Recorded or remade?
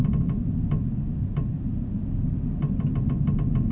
recorded